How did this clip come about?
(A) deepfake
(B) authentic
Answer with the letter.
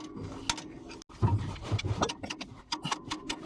B